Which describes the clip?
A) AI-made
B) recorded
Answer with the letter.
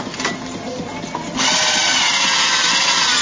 B